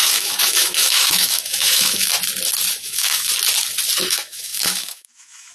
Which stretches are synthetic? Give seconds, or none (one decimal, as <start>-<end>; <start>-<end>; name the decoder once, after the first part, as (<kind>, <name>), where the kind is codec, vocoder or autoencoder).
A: 0.0-2.1 (autoencoder, DAC-VAE); 2.8-3.3; 4.1-5.5